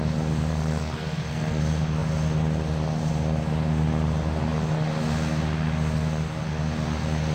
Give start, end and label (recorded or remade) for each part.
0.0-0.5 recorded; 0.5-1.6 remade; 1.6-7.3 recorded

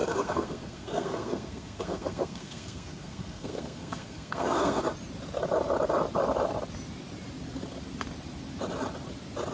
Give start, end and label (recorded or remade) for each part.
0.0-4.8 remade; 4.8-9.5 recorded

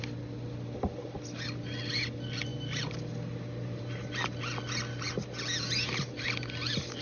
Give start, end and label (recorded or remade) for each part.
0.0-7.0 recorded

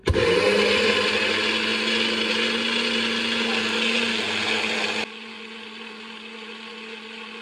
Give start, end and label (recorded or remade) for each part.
0.0-7.4 recorded